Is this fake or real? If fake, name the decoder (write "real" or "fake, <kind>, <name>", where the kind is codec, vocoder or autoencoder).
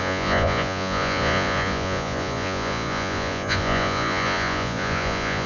fake, vocoder, Vocos